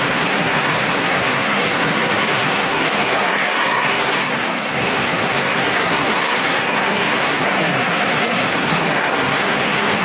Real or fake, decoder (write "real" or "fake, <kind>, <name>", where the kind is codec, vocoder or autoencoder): fake, codec, SNAC